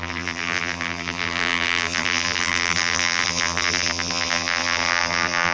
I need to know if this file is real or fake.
fake